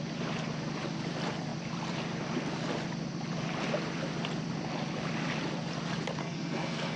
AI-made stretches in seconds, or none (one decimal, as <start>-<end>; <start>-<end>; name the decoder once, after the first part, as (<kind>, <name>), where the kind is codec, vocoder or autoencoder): 6.2-7.0 (codec, SNAC)